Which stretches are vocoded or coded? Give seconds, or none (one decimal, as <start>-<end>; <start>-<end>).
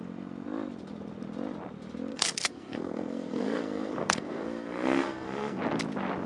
2.1-5.6